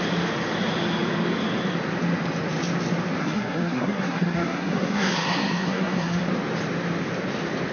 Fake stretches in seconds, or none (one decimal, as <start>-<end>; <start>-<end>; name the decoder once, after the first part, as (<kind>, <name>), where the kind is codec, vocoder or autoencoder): 3.2-6.3 (codec, SNAC)